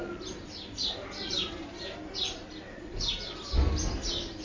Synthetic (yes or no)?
no